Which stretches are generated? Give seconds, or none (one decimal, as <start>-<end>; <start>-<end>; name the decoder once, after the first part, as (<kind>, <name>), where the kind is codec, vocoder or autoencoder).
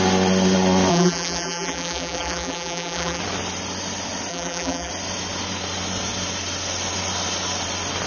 0.9-3.2 (vocoder, BigVGAN v2); 4.3-4.9